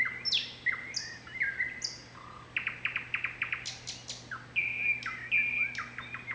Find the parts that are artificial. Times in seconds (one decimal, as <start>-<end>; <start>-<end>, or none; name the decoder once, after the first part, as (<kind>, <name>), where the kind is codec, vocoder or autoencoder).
none